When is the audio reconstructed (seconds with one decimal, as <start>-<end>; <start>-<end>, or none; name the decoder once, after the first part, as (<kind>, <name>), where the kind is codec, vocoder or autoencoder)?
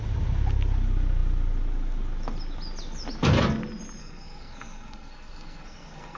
4.0-6.2 (codec, SNAC)